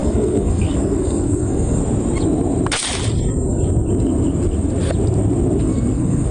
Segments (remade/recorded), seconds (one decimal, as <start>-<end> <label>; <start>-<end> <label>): 0.0-1.8 remade; 1.8-5.6 recorded; 5.6-6.3 remade